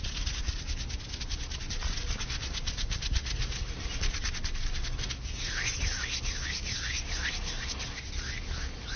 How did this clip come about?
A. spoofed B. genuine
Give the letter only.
B